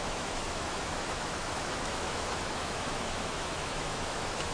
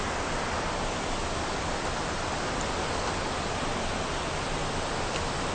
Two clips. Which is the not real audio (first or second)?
first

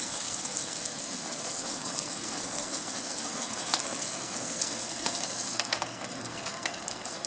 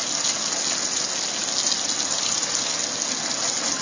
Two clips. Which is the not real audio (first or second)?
first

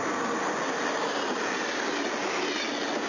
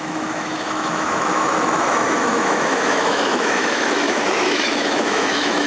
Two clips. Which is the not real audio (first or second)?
second